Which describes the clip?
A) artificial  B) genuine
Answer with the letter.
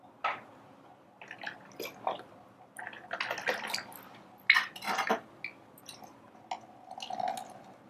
B